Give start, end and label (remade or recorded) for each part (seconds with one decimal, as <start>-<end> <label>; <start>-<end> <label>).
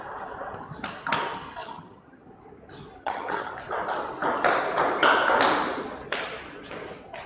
0.0-1.6 recorded; 1.6-2.3 remade; 2.3-3.0 recorded; 3.0-3.5 remade; 3.5-7.3 recorded